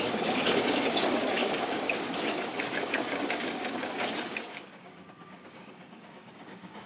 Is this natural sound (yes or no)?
no